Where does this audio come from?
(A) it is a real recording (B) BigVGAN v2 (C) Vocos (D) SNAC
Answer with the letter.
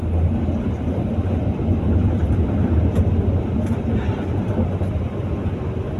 A